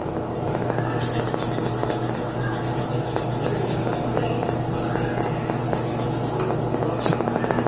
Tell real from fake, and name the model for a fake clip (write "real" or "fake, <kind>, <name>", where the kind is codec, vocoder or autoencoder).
real